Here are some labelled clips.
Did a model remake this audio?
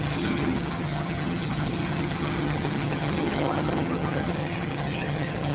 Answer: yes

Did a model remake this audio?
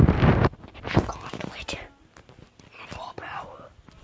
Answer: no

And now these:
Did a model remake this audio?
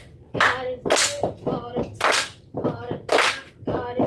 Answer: no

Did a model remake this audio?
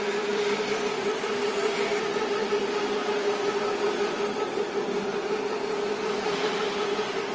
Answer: no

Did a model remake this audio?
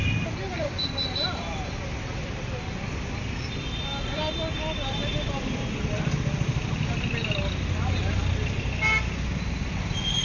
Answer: no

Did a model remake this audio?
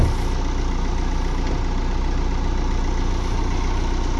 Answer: no